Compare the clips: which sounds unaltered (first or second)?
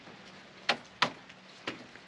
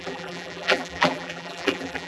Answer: first